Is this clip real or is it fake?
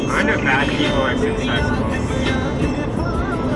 real